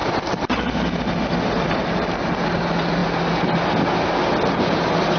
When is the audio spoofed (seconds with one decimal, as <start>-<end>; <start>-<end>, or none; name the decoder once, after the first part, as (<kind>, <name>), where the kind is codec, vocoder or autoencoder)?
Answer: none